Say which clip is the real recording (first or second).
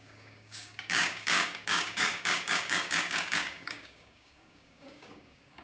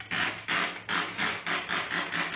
second